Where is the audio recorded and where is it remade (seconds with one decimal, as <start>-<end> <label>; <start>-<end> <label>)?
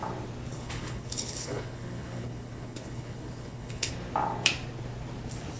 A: 0.0-0.5 recorded; 0.5-3.9 remade; 3.9-5.6 recorded